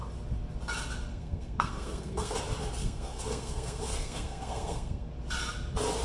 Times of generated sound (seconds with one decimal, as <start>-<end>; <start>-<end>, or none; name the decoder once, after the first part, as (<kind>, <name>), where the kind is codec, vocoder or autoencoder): 1.1-2.4 (codec, SNAC); 2.8-5.1

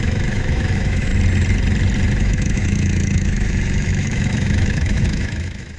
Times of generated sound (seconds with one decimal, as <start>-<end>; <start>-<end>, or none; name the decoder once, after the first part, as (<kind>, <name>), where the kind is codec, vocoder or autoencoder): 0.0-1.1 (autoencoder, DAC-VAE); 2.2-5.8

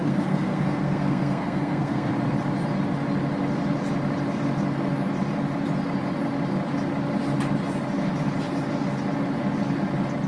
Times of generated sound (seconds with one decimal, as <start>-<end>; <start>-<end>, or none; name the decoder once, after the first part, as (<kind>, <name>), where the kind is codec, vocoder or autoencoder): 0.0-2.1 (codec, SNAC)

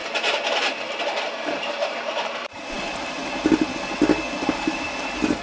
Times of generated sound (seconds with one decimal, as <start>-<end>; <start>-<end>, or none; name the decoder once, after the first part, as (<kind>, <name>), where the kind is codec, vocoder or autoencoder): 0.9-3.2 (vocoder, BigVGAN v2); 4.4-5.4

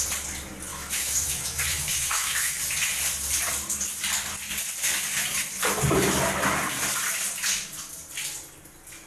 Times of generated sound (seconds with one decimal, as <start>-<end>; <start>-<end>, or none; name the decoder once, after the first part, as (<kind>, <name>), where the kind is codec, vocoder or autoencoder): 0.7-2.6 (autoencoder, DAC-VAE)

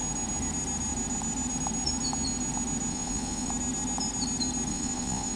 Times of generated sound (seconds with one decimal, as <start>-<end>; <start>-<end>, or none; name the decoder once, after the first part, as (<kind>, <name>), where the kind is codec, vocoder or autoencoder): 2.9-3.5 (vocoder, Vocos); 4.7-5.4